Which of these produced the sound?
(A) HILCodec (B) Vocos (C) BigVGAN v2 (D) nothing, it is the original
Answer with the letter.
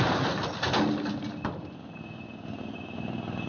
D